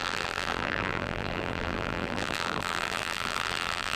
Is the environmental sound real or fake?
fake